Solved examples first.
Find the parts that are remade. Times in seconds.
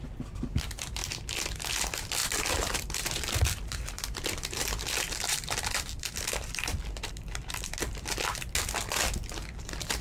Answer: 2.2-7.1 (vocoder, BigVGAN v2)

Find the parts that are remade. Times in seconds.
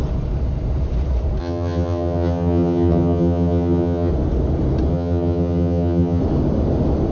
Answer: 1.4-4.1 (vocoder, HiFi-GAN); 4.9-6.2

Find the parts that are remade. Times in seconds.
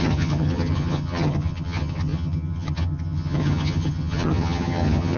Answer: 0.0-5.2 (vocoder, HiFi-GAN)